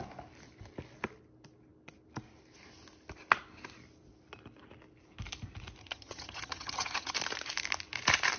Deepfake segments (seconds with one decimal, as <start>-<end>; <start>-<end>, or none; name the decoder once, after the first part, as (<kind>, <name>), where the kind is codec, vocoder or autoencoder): 5.8-7.1 (vocoder, HiFi-GAN)